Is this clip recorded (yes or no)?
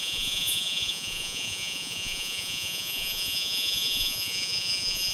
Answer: no